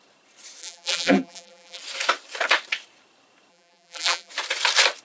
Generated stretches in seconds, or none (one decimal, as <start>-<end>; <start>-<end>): 0.6-1.8; 3.5-4.3